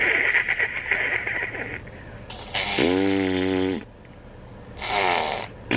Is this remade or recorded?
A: recorded